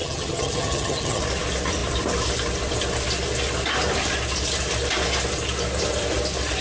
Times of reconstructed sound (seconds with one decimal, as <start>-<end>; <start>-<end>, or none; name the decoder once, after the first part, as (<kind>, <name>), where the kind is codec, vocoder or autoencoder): 0.0-1.2 (vocoder, HiFi-GAN)